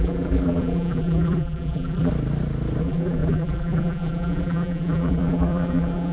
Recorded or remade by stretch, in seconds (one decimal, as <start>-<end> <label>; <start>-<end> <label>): 0.0-2.1 remade; 2.1-2.8 recorded; 2.8-6.1 remade